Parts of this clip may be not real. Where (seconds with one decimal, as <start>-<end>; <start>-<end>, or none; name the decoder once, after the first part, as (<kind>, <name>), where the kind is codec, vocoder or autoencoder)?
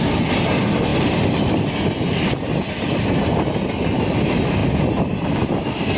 none